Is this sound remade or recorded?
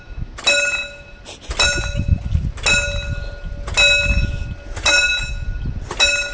recorded